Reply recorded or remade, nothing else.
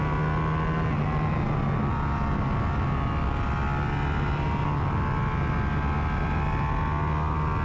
recorded